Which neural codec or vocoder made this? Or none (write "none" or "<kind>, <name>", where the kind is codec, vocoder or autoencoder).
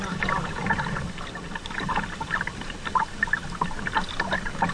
none